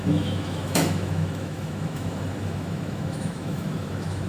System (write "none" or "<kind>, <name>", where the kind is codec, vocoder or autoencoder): autoencoder, DAC-VAE